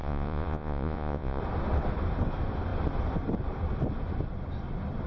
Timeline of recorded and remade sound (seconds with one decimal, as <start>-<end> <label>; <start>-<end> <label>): 0.0-1.4 remade; 1.4-5.1 recorded